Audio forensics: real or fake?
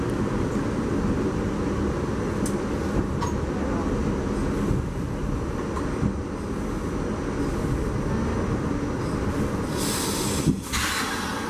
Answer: real